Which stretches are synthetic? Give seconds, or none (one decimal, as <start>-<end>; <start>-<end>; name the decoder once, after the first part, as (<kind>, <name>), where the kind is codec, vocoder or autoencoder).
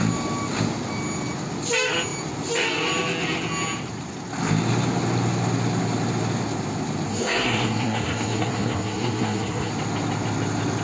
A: 7.1-9.7 (codec, SNAC)